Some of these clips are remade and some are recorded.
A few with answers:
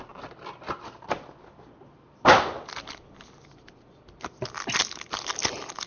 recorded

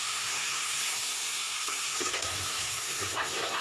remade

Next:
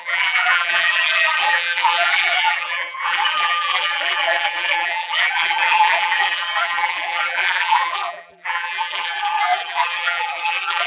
remade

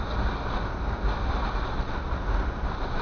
recorded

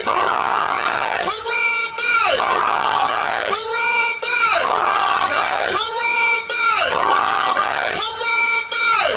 remade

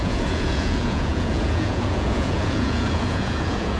remade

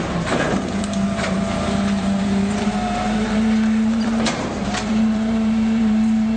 remade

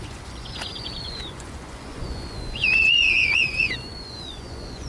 remade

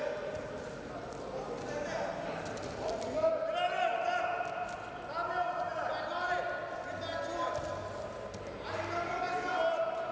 recorded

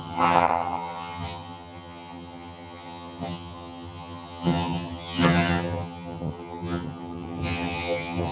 remade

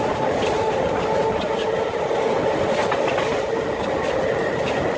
recorded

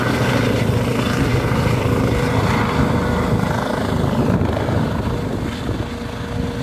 recorded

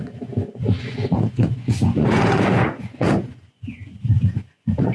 remade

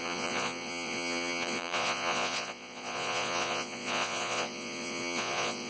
remade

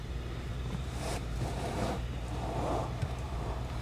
remade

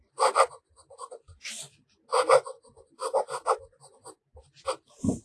recorded